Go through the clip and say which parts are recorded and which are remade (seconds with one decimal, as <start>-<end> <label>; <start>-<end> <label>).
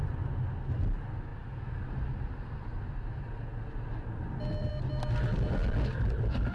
0.0-6.5 recorded